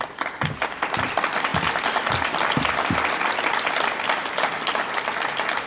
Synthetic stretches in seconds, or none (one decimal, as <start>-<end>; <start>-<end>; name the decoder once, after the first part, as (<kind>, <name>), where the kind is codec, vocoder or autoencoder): none